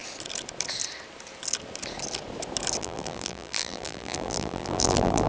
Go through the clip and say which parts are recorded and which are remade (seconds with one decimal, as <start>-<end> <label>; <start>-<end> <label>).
0.0-2.8 recorded; 2.8-5.3 remade

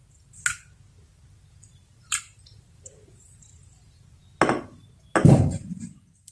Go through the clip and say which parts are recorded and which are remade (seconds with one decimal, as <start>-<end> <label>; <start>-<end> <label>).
0.0-1.1 recorded; 1.1-4.2 remade; 4.2-5.3 recorded; 5.3-6.3 remade

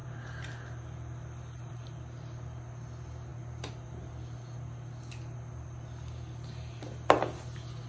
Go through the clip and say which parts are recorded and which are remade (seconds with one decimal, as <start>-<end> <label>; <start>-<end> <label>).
0.0-7.9 recorded

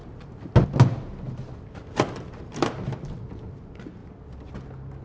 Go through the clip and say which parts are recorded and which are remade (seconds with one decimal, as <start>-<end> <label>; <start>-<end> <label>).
0.0-4.0 recorded; 4.0-4.5 remade; 4.5-5.0 recorded

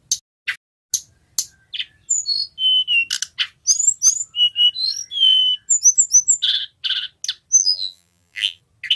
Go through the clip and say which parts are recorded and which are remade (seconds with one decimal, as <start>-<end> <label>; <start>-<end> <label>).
0.0-7.6 recorded; 7.6-8.6 remade; 8.6-9.0 recorded

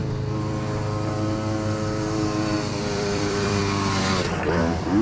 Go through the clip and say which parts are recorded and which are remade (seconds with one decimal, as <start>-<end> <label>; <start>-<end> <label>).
0.0-2.8 recorded; 2.8-3.6 remade; 3.6-4.6 recorded; 4.6-5.0 remade